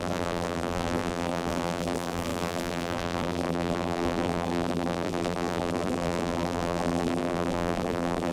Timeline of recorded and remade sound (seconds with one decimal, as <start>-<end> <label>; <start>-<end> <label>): 0.0-8.3 remade